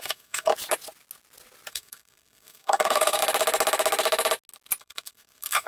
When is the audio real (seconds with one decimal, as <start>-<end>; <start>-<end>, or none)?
0.5-1.7; 3.2-4.8